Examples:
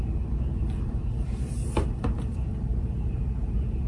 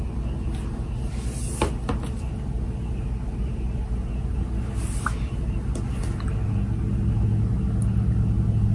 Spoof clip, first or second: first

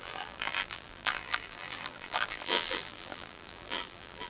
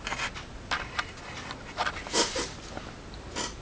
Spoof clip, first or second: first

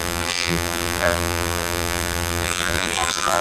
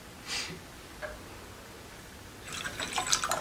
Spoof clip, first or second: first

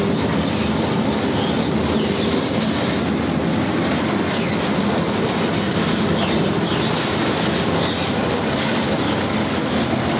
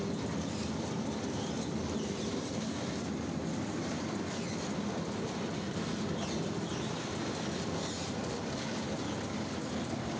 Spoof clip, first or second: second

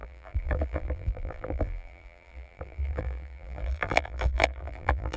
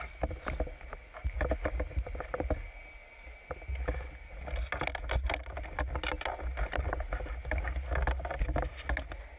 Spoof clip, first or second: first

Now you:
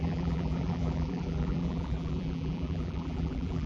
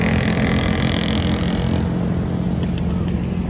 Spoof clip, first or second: first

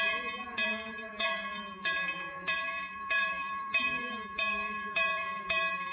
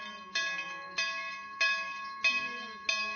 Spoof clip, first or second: first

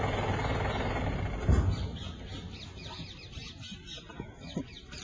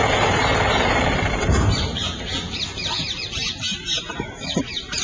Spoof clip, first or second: second